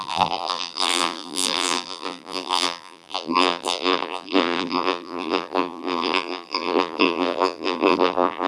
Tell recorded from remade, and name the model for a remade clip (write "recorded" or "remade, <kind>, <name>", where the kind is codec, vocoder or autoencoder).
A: remade, vocoder, BigVGAN v2